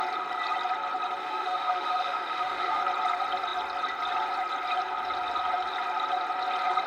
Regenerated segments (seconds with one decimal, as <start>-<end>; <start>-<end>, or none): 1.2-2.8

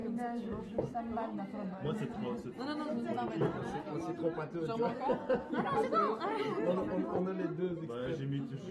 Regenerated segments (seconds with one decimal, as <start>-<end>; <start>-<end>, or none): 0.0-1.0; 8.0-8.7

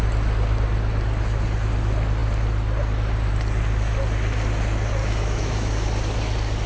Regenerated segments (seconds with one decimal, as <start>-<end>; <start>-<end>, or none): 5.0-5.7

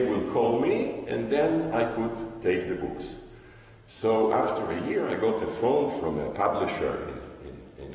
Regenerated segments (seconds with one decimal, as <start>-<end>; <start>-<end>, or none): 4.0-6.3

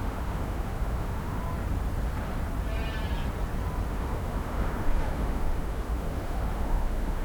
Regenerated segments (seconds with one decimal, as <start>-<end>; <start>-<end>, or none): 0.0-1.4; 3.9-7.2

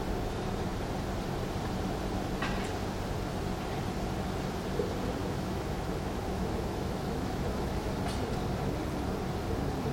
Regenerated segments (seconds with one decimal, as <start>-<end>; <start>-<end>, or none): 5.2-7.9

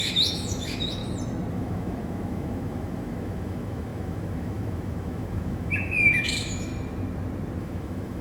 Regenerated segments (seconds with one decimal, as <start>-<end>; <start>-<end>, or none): 0.0-1.0; 1.5-6.7; 7.6-8.2